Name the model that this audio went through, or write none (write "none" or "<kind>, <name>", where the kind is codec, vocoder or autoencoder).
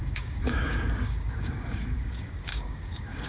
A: codec, DAC